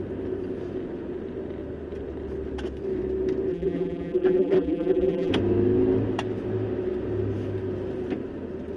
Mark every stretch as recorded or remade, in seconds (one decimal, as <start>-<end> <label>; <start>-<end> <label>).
0.0-3.5 recorded; 3.5-5.3 remade; 5.3-8.8 recorded